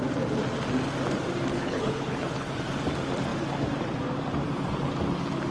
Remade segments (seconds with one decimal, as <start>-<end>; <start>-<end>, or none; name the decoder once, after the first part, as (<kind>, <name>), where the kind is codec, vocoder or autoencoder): 1.5-2.6 (codec, HILCodec)